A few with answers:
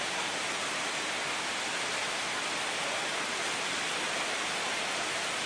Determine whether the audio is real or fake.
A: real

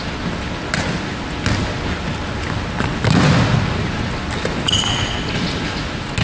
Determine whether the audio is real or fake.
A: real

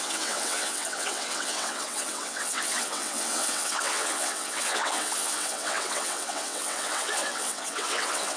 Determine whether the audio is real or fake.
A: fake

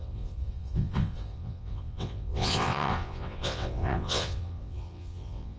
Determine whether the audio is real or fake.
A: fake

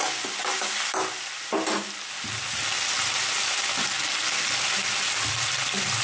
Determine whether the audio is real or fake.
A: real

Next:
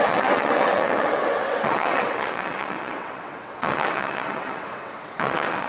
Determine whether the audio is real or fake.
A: fake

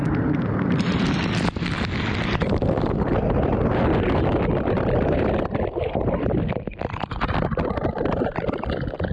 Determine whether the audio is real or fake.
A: real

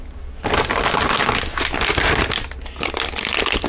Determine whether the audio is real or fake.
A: real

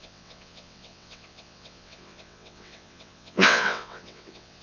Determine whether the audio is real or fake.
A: fake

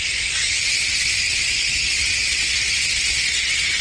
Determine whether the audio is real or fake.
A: fake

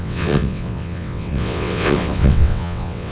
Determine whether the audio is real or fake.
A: fake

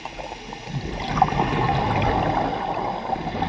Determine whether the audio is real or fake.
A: real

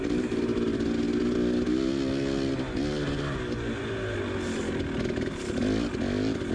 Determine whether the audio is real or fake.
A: real